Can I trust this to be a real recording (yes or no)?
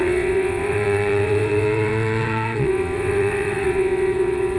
no